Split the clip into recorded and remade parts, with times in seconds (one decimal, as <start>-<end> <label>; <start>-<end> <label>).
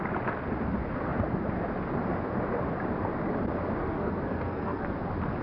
0.0-3.8 recorded; 3.8-4.9 remade; 4.9-5.4 recorded